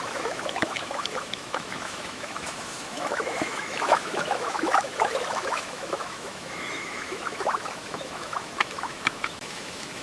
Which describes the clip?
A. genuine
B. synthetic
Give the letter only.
B